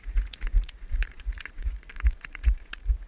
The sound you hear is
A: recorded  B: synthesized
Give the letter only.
B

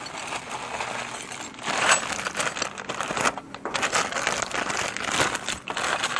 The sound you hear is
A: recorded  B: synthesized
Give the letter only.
A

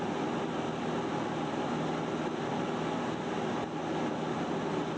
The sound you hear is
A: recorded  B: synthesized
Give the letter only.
A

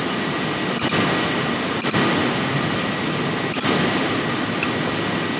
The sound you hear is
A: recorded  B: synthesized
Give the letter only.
A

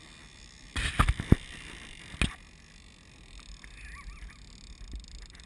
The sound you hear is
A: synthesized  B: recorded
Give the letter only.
B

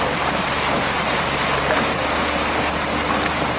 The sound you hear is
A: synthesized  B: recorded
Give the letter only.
B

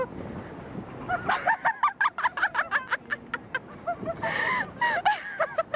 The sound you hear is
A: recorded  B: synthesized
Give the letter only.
A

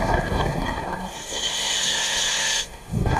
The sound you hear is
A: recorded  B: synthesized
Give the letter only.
B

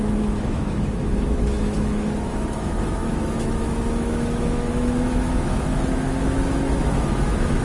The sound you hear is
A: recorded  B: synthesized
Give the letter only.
B